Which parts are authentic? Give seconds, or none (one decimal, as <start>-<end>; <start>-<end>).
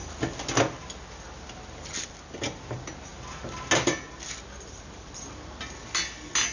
0.0-6.5